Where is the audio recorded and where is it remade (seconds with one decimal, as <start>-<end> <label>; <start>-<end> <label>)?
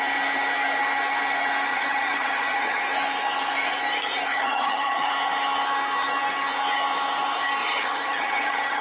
0.0-1.7 recorded; 1.7-2.8 remade; 2.8-4.3 recorded; 4.3-5.1 remade; 5.1-7.6 recorded; 7.6-8.8 remade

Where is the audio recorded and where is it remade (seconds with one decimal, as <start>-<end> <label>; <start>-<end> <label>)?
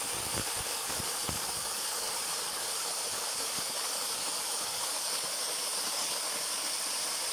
0.0-6.7 remade; 6.7-7.3 recorded